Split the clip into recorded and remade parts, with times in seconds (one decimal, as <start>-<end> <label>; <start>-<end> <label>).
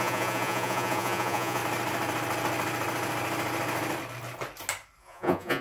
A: 0.0-1.6 remade; 1.6-5.0 recorded; 5.0-5.6 remade